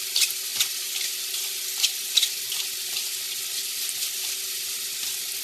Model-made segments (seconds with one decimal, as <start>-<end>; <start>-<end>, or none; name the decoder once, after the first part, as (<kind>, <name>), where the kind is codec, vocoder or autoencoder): 0.5-3.0 (vocoder, BigVGAN v2)